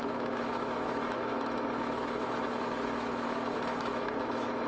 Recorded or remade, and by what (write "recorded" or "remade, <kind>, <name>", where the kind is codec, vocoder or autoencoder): remade, autoencoder, DAC-VAE